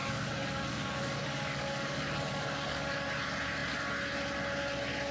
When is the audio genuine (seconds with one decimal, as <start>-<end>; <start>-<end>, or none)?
3.1-5.1